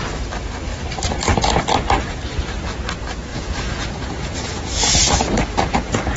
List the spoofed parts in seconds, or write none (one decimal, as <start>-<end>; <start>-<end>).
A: 3.3-5.2